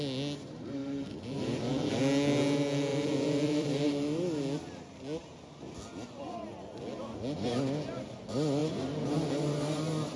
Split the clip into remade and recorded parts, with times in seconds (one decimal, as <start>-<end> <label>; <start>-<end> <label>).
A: 0.0-0.8 recorded; 0.8-2.0 remade; 2.0-2.9 recorded; 2.9-3.9 remade; 3.9-10.2 recorded